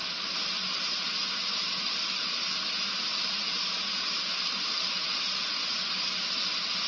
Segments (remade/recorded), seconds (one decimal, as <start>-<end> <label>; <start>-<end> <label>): 0.0-3.1 recorded; 3.1-5.8 remade; 5.8-6.9 recorded